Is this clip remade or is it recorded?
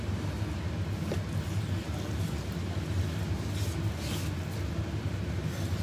recorded